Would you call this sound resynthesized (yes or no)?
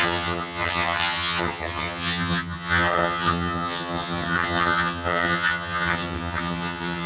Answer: yes